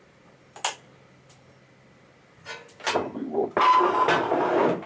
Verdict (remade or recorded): recorded